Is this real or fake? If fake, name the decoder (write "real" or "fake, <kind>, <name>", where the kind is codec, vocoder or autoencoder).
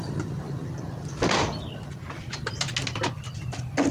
real